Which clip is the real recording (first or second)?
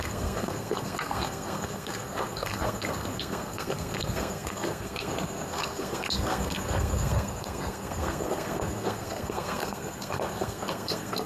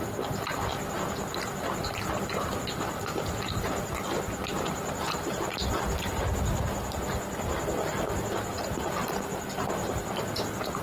second